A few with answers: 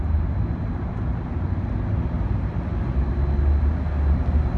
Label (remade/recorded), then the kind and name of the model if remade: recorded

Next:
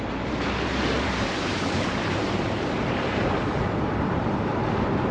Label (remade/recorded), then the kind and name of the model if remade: remade, vocoder, BigVGAN v2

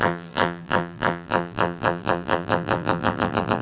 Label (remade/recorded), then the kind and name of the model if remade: remade, vocoder, BigVGAN v2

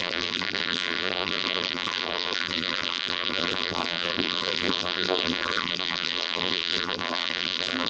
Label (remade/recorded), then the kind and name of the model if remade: remade, vocoder, BigVGAN v2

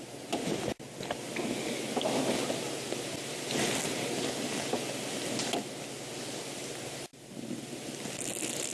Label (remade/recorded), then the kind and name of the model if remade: recorded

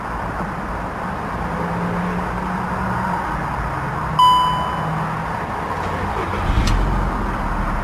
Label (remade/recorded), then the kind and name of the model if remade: recorded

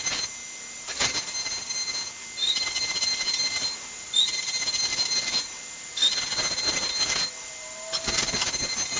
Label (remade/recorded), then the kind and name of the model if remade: recorded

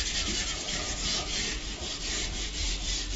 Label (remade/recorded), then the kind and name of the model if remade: remade, vocoder, BigVGAN v2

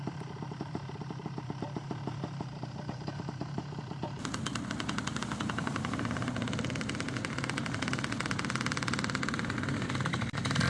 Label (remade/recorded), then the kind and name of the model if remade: remade, vocoder, BigVGAN v2